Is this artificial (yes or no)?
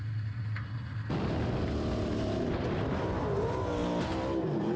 no